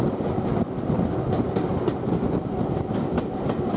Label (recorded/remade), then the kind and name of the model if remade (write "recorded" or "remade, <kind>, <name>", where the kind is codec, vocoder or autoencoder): recorded